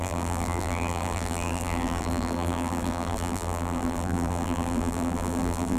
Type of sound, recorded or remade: remade